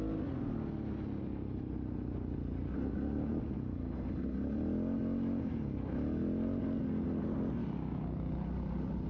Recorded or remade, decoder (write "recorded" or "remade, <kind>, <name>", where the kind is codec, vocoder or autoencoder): recorded